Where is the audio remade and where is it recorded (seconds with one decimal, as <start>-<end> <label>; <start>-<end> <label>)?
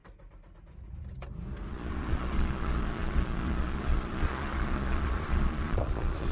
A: 0.0-1.7 recorded; 1.7-6.3 remade